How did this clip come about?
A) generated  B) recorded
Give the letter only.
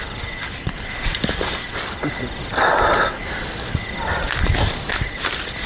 B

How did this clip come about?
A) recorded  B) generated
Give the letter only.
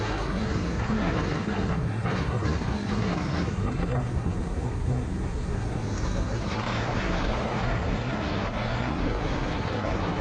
B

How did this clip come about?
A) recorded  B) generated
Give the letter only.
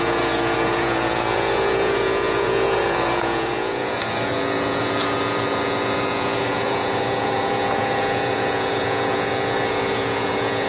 B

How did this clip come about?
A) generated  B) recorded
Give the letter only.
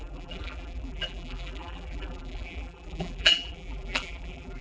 A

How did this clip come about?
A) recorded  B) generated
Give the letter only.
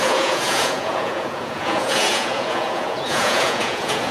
B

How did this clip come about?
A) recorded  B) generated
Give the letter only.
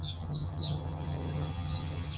B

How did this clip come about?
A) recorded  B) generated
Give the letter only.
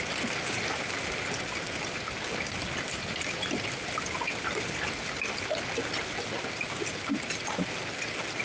A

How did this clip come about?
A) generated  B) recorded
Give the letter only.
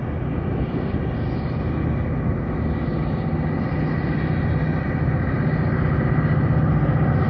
B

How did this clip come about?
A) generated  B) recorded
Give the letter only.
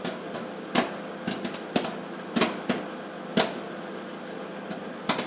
B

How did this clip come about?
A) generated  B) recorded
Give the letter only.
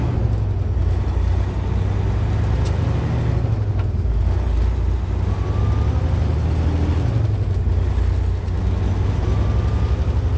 B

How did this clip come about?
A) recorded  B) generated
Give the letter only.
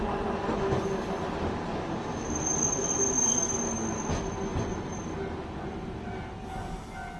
A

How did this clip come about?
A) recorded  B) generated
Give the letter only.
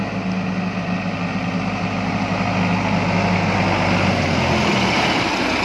A